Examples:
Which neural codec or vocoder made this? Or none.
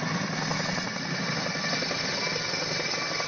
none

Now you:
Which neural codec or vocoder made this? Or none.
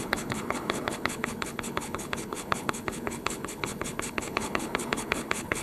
codec, HILCodec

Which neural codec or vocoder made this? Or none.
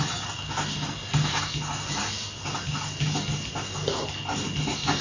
none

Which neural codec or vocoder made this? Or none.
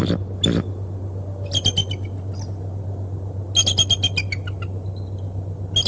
none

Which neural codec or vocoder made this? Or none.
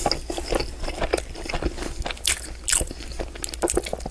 none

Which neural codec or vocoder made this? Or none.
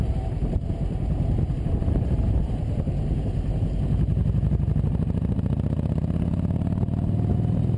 vocoder, BigVGAN v2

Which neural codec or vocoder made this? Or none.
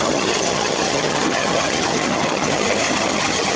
vocoder, HiFi-GAN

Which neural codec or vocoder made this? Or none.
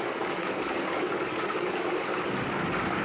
codec, DAC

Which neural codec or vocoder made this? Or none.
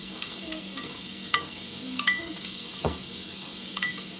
codec, SNAC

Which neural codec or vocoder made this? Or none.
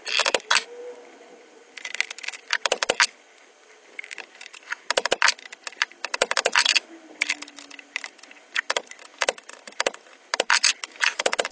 none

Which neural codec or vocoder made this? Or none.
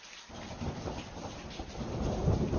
vocoder, BigVGAN v2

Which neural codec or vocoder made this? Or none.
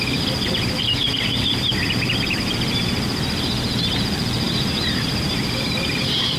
vocoder, BigVGAN v2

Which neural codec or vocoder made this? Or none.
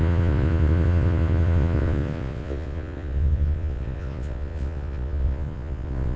vocoder, Vocos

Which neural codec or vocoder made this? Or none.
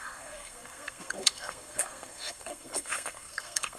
codec, SNAC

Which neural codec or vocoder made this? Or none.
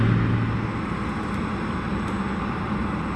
none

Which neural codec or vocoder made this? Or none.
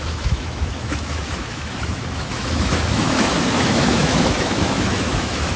autoencoder, DAC-VAE